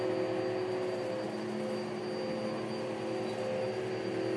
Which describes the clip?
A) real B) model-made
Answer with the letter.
A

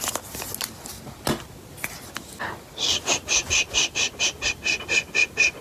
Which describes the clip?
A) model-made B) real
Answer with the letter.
B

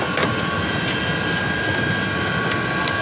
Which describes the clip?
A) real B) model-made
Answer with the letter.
A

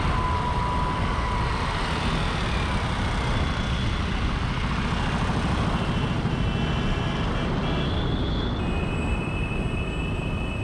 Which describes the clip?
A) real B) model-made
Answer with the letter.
A